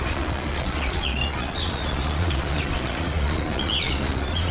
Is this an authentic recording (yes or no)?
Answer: no